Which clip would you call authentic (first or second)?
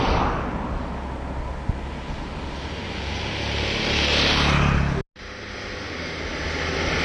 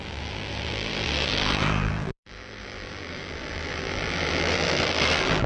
first